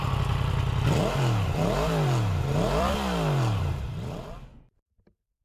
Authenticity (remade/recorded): remade